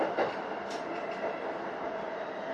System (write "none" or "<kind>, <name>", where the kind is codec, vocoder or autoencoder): none